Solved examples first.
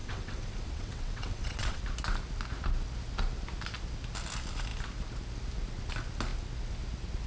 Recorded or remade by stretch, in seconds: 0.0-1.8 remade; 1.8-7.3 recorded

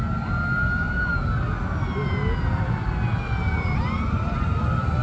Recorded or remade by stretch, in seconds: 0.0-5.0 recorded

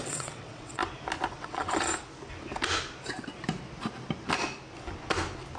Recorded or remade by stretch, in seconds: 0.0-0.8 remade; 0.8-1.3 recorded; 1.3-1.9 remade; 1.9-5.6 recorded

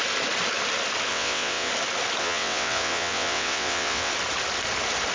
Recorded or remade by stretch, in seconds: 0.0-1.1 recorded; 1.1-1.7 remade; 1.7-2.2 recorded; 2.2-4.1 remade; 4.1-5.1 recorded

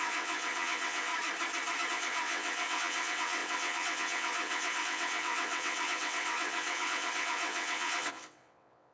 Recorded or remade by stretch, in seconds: 0.0-1.1 remade; 1.1-1.9 recorded; 1.9-8.9 remade

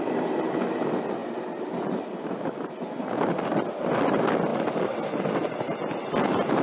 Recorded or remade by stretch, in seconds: 0.0-6.6 recorded

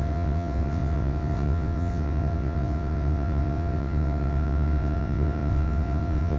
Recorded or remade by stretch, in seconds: 0.0-6.4 remade

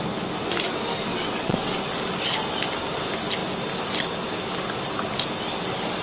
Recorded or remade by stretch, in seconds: 0.0-1.1 recorded; 1.1-1.8 remade; 1.8-6.0 recorded